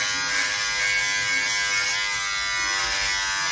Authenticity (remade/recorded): recorded